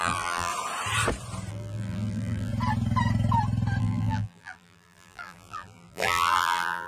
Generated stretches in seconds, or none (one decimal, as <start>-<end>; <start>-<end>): 0.0-0.5; 1.5-2.5; 3.8-6.9